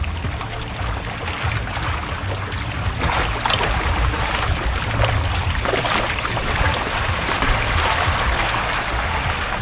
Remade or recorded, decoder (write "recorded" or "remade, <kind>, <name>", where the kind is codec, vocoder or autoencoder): recorded